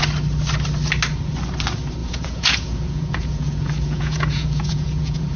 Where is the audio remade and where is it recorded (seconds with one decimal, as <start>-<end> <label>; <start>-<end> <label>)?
0.0-2.0 recorded; 2.0-5.4 remade